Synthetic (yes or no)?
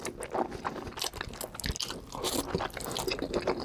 no